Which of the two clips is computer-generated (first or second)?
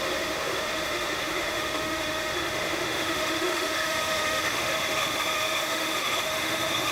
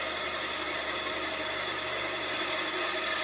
first